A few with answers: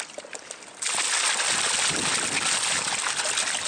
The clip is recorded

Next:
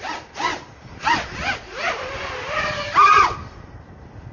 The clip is recorded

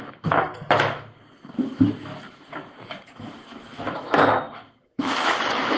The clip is remade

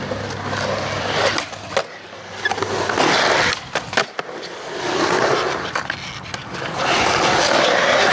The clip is recorded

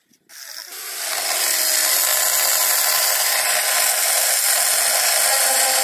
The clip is recorded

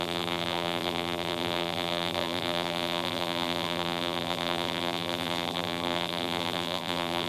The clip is remade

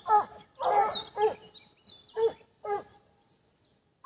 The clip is recorded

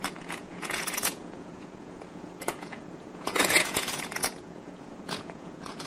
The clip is remade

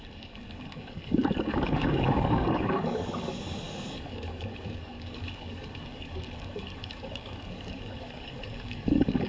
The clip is remade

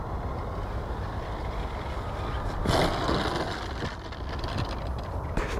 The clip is recorded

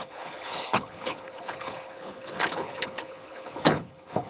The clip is remade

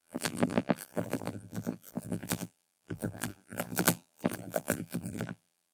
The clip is remade